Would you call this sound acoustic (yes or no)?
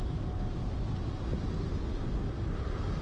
yes